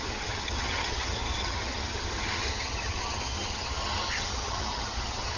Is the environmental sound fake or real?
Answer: fake